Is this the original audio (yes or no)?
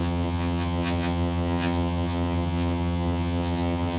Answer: no